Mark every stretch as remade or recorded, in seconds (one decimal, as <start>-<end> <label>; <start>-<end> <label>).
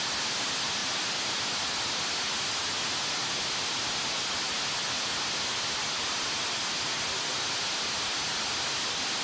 0.0-9.2 recorded